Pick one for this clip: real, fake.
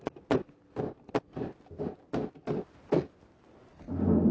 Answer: real